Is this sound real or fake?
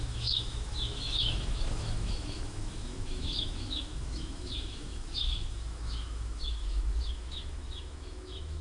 fake